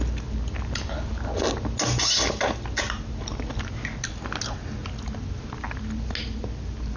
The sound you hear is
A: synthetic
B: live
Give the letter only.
B